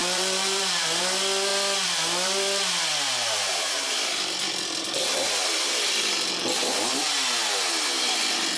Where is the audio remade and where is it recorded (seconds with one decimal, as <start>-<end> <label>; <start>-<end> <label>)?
0.0-1.0 remade; 1.0-1.5 recorded; 1.5-5.7 remade; 5.7-8.6 recorded